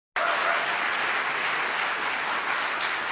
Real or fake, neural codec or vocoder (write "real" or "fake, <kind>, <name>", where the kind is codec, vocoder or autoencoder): real